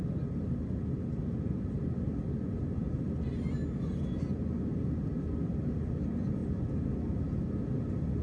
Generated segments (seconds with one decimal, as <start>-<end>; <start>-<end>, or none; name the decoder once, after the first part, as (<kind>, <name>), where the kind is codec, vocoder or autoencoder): none